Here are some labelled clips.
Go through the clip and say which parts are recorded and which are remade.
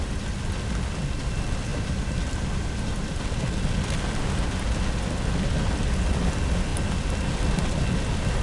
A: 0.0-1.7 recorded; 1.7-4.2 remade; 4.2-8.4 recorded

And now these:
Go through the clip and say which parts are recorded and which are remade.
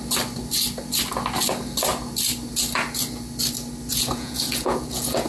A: 0.0-3.9 recorded; 3.9-5.3 remade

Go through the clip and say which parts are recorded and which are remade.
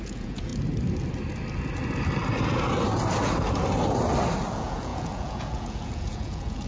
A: 0.0-0.5 remade; 0.5-4.5 recorded; 4.5-6.7 remade